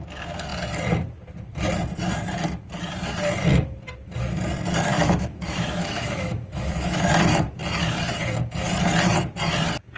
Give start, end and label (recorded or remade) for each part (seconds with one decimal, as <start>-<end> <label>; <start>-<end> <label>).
0.0-4.9 recorded; 4.9-7.1 remade; 7.1-10.0 recorded